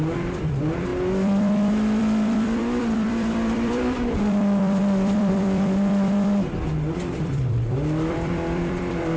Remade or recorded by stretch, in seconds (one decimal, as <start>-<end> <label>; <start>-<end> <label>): 0.0-9.2 remade